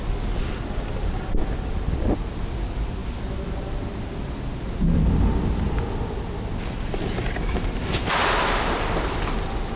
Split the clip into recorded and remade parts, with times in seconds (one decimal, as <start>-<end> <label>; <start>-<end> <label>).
0.0-9.8 recorded